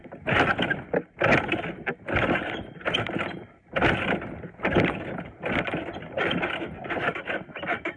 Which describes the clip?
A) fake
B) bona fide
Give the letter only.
B